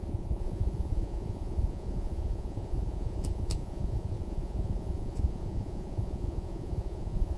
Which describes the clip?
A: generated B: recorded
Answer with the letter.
A